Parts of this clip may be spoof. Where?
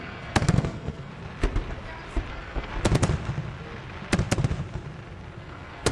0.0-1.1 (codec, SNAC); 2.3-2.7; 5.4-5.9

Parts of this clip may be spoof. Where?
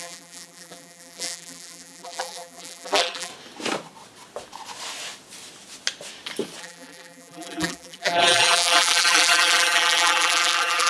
0.0-3.3 (vocoder, BigVGAN v2); 6.6-10.9